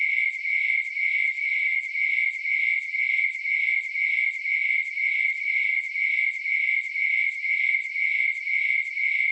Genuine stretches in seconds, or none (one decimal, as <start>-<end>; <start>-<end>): 0.0-9.3